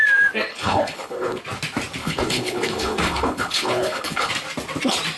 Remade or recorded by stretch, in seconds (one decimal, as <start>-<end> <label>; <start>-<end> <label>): 0.0-0.5 recorded; 0.5-1.4 remade; 1.4-2.0 recorded; 2.0-4.3 remade; 4.3-5.2 recorded